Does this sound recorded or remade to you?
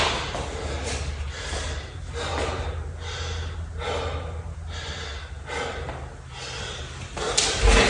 recorded